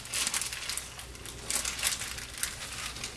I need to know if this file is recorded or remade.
recorded